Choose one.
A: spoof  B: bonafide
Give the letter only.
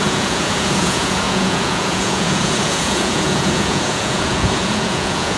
A